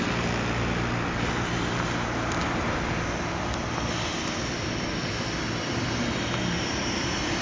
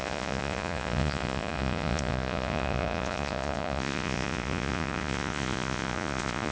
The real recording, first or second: first